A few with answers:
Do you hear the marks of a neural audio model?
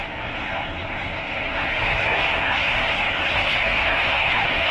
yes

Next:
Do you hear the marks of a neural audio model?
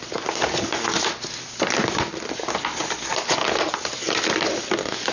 no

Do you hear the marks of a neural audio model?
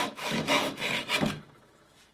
yes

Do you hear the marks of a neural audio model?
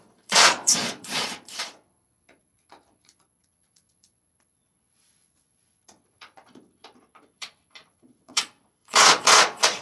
yes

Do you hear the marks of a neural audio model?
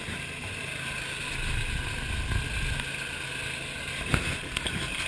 no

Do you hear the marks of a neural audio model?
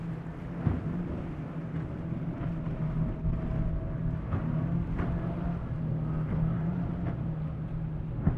no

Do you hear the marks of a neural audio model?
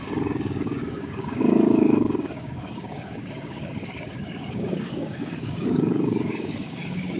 yes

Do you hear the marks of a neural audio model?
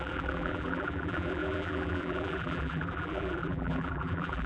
yes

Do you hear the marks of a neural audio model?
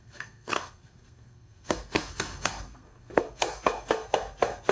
yes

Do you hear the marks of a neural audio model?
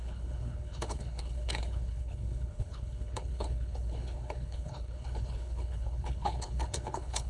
yes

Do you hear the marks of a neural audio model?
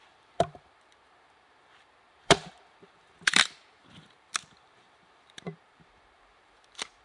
yes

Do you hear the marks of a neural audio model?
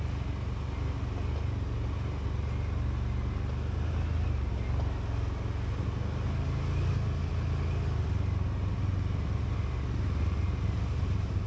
no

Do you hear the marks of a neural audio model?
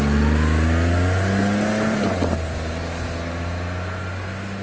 no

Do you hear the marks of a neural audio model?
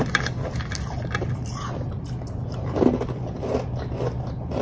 no